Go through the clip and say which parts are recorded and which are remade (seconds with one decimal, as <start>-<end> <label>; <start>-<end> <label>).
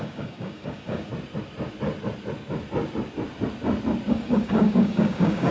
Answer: 0.0-1.1 remade; 1.1-4.1 recorded; 4.1-5.5 remade